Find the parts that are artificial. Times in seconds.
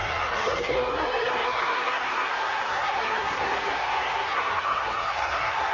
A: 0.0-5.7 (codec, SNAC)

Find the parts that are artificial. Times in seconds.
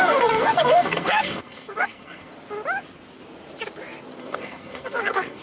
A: 0.0-2.3 (codec, SNAC); 4.2-5.4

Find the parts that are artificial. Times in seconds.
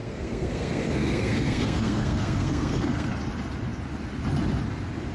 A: 0.0-3.1 (codec, SNAC)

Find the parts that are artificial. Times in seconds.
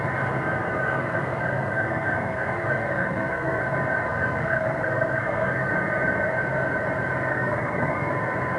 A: 0.8-3.6 (codec, SNAC); 4.1-5.7; 7.3-8.1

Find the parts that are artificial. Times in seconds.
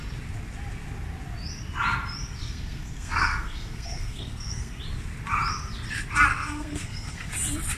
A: 2.4-4.8 (codec, SNAC); 6.3-7.3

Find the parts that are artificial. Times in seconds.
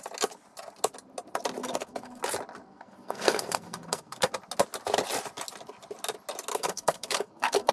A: 1.6-2.2 (codec, SNAC); 2.6-4.3; 6.5-7.7